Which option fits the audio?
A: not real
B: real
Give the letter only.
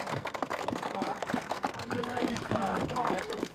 A